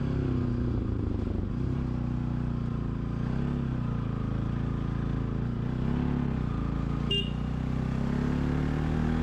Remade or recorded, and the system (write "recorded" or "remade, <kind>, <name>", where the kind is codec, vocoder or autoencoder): recorded